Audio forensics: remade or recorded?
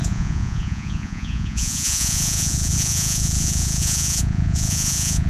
remade